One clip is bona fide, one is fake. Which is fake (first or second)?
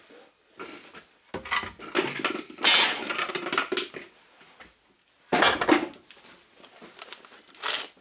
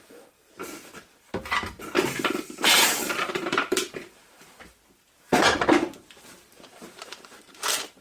second